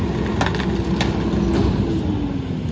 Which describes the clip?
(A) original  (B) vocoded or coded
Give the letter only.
A